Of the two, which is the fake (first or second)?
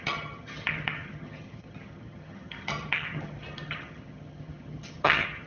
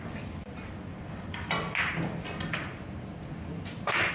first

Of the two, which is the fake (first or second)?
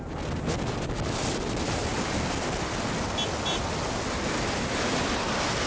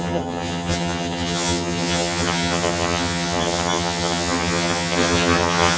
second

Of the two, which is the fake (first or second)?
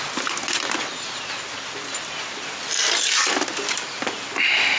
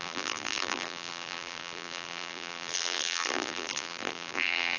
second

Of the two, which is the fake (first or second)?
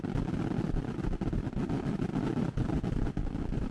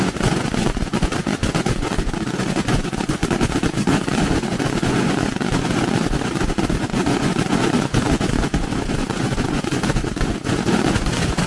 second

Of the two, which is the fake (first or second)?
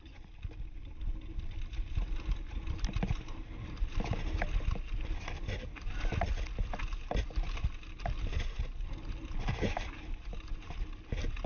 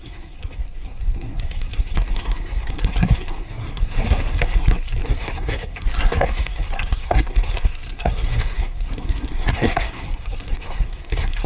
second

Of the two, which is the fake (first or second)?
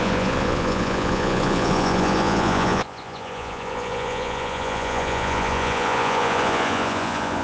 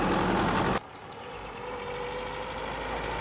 first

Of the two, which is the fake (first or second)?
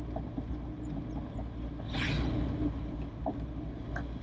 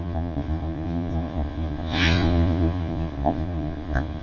second